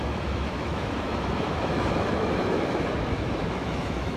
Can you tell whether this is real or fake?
fake